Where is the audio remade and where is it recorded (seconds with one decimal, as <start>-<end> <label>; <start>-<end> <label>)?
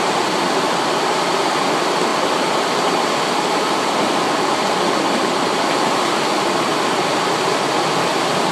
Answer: 0.0-8.5 recorded